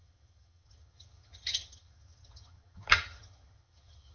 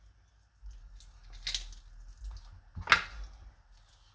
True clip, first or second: second